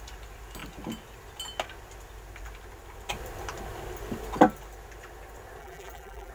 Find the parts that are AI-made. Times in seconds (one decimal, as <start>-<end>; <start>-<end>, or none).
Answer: 5.6-6.3